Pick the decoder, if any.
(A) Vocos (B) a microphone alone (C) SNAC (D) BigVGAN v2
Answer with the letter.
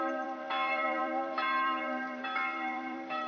D